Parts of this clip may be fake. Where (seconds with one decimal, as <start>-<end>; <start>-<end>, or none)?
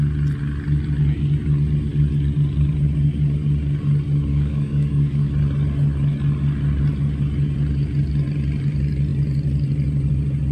4.3-5.3